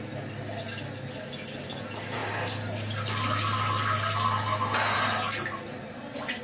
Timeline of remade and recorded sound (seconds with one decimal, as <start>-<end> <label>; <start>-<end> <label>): 0.0-6.4 recorded